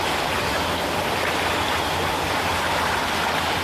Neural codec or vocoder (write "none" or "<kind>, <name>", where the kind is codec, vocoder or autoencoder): none